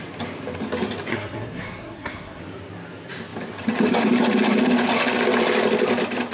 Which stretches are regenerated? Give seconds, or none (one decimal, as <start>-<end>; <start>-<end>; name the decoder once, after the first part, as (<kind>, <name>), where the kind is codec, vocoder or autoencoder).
1.1-2.4 (codec, SNAC)